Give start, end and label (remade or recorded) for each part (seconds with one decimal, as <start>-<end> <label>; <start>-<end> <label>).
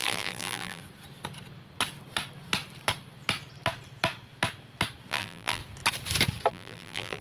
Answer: 0.0-0.8 remade; 0.8-5.1 recorded; 5.1-5.6 remade; 5.6-6.5 recorded; 6.5-7.2 remade